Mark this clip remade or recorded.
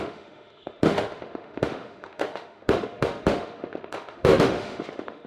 remade